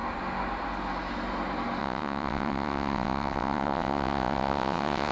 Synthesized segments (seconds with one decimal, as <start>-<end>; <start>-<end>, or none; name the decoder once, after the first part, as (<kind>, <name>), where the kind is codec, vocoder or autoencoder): 1.8-5.1 (vocoder, WaveNeXt)